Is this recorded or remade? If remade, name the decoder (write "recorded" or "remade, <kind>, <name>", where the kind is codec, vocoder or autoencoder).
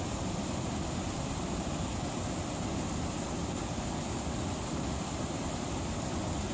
recorded